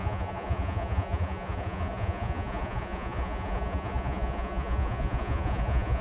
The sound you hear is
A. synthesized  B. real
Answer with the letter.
A